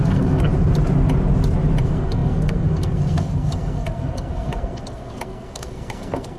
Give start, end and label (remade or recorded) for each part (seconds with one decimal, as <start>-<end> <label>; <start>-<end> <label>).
0.0-0.5 remade; 0.5-1.8 recorded; 1.8-6.4 remade